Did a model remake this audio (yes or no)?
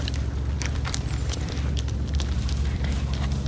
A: yes